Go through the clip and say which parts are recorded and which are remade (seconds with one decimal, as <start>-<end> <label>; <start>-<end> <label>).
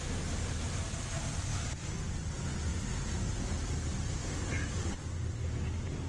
0.0-1.5 recorded; 1.5-2.1 remade; 2.1-3.9 recorded; 3.9-4.9 remade; 4.9-6.1 recorded